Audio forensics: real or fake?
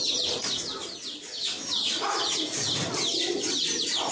real